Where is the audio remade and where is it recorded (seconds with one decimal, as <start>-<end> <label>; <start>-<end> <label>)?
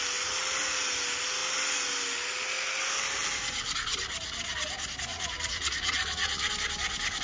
0.0-5.1 recorded; 5.1-6.5 remade; 6.5-7.2 recorded